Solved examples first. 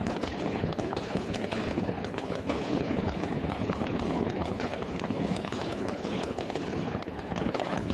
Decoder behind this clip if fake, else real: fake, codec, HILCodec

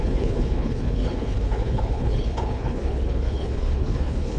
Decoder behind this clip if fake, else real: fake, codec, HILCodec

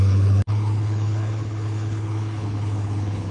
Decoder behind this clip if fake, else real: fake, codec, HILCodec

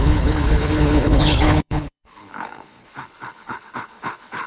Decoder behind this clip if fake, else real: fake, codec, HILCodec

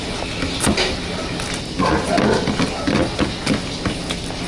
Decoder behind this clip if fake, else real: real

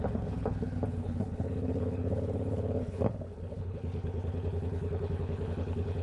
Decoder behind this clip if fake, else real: fake, codec, HILCodec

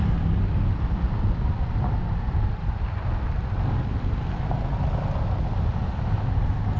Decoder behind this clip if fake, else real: real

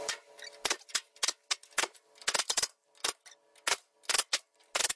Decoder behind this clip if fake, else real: real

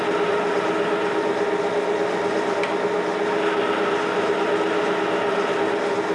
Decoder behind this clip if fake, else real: real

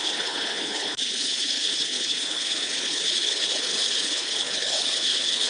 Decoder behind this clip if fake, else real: fake, codec, HILCodec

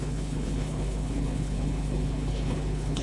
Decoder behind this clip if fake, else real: fake, codec, HILCodec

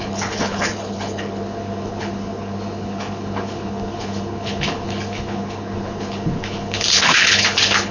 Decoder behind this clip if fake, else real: fake, codec, HILCodec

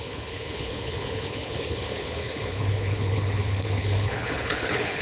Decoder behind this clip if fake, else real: fake, codec, HILCodec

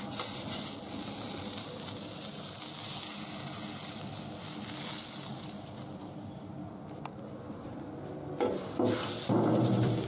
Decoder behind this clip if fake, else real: real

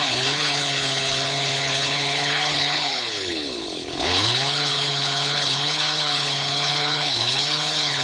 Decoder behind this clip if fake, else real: fake, codec, HILCodec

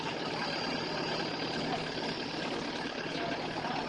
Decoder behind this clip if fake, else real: real